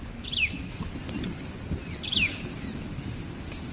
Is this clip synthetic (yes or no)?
no